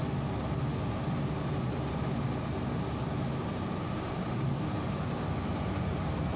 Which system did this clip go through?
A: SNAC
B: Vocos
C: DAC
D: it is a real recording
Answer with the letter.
D